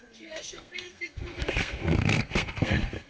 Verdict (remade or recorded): remade